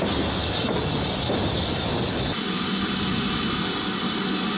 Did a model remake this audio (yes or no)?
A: no